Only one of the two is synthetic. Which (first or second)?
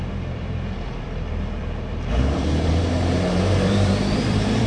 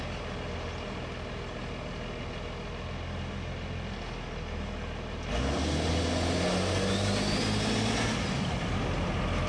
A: first